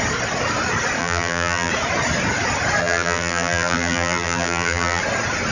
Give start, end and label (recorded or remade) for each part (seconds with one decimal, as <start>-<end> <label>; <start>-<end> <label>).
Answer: 0.0-1.0 recorded; 1.0-1.7 remade; 1.7-2.8 recorded; 2.8-5.0 remade; 5.0-5.5 recorded